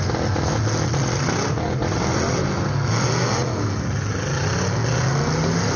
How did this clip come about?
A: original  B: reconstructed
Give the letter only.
A